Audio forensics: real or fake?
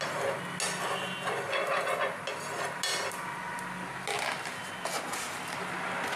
real